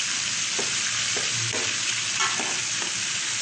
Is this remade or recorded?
recorded